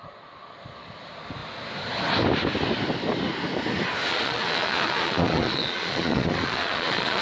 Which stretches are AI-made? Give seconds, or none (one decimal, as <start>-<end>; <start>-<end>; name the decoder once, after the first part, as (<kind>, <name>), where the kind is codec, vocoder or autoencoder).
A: 4.1-7.2 (vocoder, Vocos)